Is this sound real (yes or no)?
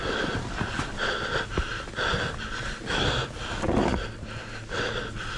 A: yes